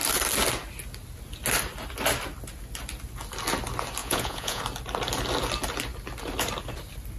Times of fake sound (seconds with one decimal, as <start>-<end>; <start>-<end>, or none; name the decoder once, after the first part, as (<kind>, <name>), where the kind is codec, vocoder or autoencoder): 4.0-4.6 (vocoder, Vocos)